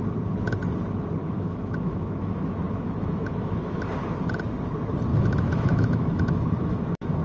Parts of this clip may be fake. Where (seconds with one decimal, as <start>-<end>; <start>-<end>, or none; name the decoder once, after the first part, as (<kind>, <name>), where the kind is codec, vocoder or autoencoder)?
1.2-3.9 (autoencoder, DAC-VAE); 5.1-7.2